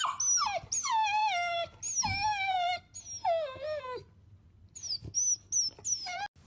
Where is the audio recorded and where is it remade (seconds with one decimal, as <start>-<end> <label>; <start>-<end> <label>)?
0.0-6.5 recorded